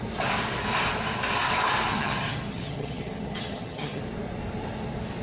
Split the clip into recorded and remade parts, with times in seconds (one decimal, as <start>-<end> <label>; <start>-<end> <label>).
0.0-1.9 recorded; 1.9-4.0 remade; 4.0-5.2 recorded